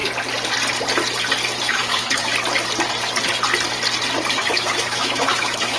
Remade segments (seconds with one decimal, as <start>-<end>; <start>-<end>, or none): 1.6-2.3; 4.3-5.8